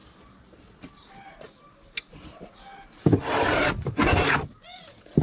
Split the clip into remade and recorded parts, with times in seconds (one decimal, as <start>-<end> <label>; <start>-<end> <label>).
0.0-5.2 recorded